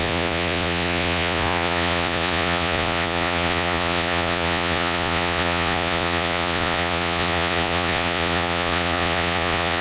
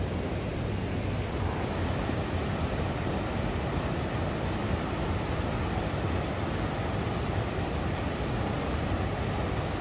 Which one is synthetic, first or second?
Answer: first